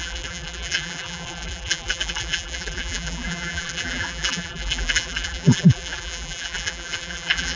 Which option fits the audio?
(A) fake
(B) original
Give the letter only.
A